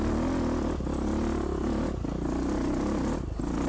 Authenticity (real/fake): real